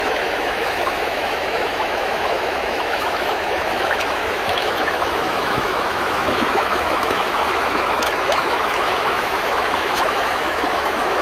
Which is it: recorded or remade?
remade